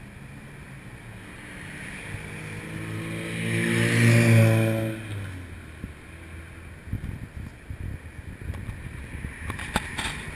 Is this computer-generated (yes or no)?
no